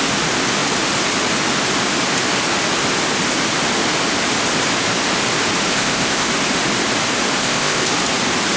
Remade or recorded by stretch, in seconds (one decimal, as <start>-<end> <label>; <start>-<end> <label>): 0.0-5.7 recorded; 5.7-6.3 remade; 6.3-7.4 recorded; 7.4-7.9 remade; 7.9-8.6 recorded